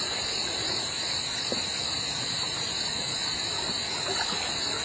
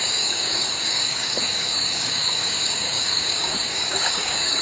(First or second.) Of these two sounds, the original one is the first